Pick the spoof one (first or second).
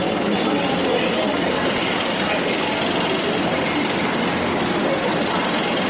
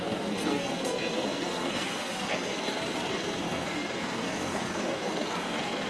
second